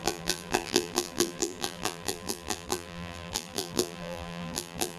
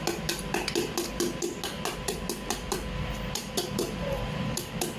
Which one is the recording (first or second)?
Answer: second